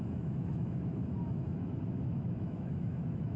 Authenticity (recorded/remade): remade